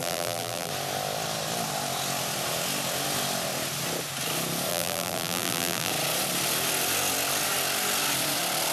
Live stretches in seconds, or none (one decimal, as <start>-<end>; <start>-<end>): 0.7-4.7; 5.9-8.7